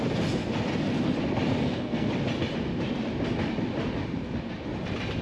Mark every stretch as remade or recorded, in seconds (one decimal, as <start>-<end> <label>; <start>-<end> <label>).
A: 0.0-1.6 recorded; 1.6-2.1 remade; 2.1-5.2 recorded